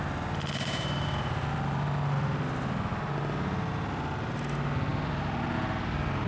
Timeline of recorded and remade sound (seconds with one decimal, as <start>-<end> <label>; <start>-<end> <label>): 0.0-6.3 recorded

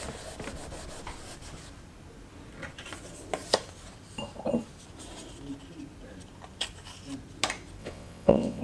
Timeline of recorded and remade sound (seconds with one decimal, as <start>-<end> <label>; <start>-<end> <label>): 0.0-7.8 recorded; 7.8-8.6 remade

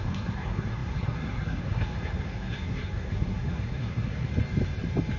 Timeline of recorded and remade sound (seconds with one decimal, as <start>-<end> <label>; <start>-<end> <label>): 0.0-4.3 remade; 4.3-5.2 recorded

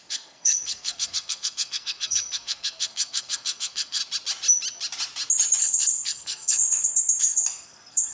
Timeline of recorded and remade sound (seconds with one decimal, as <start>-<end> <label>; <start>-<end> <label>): 0.0-4.0 remade; 4.0-5.6 recorded; 5.6-8.1 remade

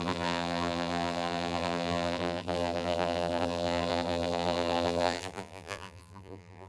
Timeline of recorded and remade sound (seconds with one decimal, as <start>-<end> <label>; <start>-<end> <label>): 0.0-6.7 remade

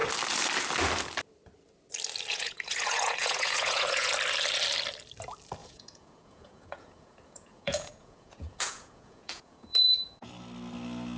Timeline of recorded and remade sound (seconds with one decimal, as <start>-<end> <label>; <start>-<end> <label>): 0.0-2.3 recorded; 2.3-4.1 remade; 4.1-5.6 recorded; 5.6-10.3 remade; 10.3-11.2 recorded